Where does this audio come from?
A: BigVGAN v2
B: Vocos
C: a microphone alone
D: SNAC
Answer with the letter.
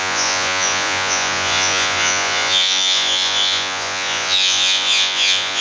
B